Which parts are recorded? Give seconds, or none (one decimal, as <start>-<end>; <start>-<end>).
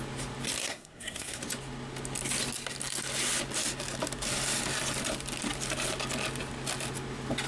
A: 0.0-0.6; 1.4-7.5